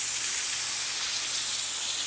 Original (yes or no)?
yes